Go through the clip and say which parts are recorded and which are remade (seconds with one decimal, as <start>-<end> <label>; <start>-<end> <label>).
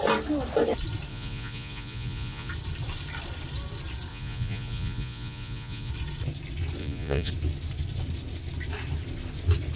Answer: 0.0-1.1 recorded; 1.1-2.5 remade; 2.5-4.1 recorded; 4.1-5.9 remade; 5.9-6.8 recorded; 6.8-7.3 remade; 7.3-9.8 recorded